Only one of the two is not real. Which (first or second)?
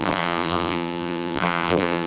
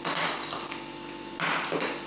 first